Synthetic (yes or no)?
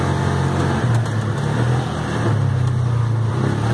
no